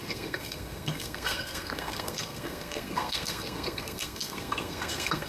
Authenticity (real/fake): fake